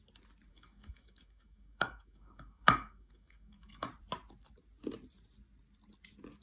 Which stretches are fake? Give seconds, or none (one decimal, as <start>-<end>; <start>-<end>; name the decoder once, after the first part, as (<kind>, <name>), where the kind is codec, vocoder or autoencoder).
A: 0.5-3.9 (codec, DAC)